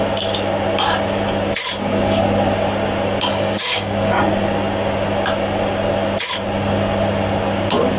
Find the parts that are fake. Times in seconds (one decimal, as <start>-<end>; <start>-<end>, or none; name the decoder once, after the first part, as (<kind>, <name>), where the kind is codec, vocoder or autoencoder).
3.3-4.2 (codec, DAC)